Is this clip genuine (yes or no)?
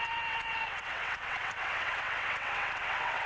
no